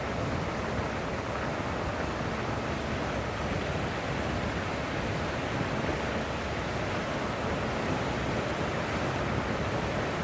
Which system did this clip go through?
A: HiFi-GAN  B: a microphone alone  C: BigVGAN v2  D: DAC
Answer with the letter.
B